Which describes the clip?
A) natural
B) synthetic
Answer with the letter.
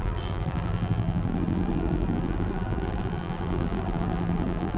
B